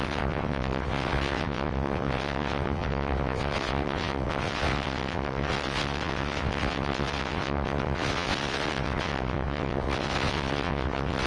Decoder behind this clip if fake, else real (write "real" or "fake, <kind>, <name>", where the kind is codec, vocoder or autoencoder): fake, vocoder, WaveNeXt